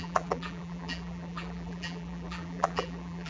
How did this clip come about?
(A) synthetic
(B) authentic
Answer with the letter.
A